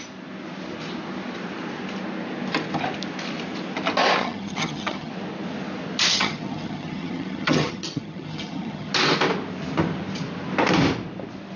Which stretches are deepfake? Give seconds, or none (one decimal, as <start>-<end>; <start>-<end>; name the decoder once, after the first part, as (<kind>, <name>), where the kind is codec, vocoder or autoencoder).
4.2-5.1 (vocoder, HiFi-GAN); 6.1-8.9

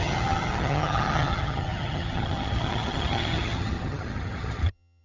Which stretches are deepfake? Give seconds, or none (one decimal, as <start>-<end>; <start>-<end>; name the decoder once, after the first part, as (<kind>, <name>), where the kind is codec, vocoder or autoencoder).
0.0-5.0 (vocoder, HiFi-GAN)

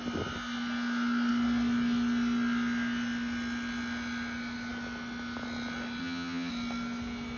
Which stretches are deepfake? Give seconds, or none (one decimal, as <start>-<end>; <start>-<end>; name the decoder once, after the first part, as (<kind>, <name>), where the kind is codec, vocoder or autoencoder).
6.0-6.5 (vocoder, HiFi-GAN)

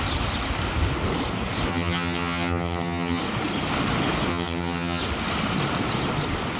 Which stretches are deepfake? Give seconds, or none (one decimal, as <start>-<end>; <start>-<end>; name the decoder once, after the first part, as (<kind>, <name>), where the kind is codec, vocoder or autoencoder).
1.7-3.2 (vocoder, HiFi-GAN); 4.3-5.0